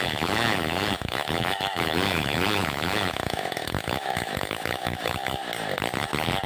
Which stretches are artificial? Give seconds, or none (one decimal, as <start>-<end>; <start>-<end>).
0.0-5.4